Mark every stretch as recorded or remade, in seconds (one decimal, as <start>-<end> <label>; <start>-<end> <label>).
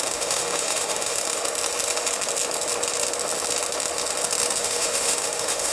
0.0-1.2 remade; 1.2-4.6 recorded; 4.6-5.7 remade